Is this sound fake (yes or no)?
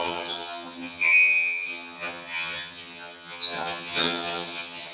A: yes